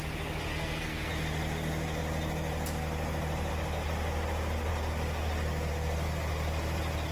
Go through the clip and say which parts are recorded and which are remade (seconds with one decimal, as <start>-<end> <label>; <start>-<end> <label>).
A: 0.0-0.5 recorded; 0.5-1.1 remade; 1.1-7.1 recorded

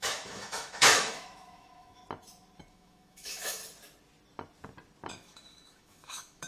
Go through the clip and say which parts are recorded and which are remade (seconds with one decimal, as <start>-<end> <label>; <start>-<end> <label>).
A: 0.0-2.0 remade; 2.0-2.7 recorded; 2.7-3.6 remade; 3.6-5.1 recorded; 5.1-6.5 remade

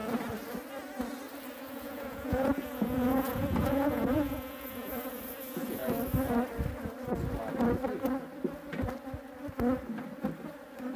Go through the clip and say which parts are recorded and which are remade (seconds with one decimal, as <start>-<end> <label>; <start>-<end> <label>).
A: 0.0-1.7 recorded; 1.7-5.8 remade; 5.8-11.0 recorded

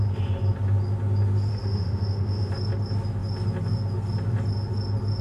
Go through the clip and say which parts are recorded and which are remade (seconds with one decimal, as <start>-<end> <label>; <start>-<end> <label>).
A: 0.0-1.5 recorded; 1.5-2.5 remade; 2.5-5.2 recorded